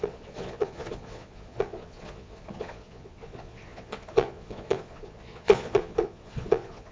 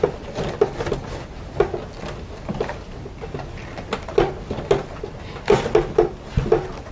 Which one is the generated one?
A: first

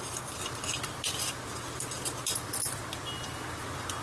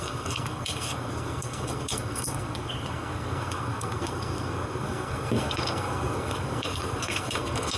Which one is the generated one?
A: second